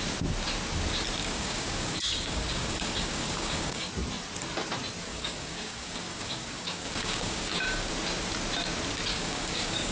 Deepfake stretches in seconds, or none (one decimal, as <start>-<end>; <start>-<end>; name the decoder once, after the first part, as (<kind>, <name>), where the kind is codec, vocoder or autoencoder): 1.2-3.9 (codec, DAC); 5.1-7.9; 9.1-9.9